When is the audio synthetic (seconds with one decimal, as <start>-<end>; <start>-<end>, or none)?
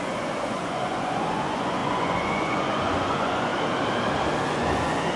0.0-3.5; 4.5-5.2